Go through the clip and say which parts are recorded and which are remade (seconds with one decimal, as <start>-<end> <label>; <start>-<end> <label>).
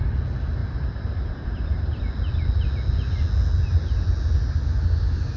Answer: 0.0-0.6 recorded; 0.6-2.0 remade; 2.0-5.4 recorded